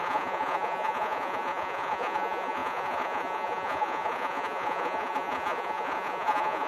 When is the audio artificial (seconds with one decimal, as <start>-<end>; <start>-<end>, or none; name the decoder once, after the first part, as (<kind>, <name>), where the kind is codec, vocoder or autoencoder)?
0.0-6.7 (vocoder, Vocos)